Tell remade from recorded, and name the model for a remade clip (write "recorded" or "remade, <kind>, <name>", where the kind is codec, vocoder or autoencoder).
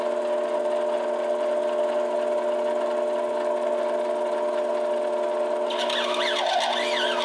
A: recorded